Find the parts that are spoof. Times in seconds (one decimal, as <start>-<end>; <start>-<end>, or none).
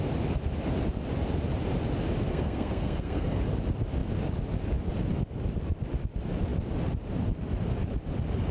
2.3-3.4